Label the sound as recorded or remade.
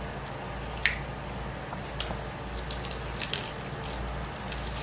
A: recorded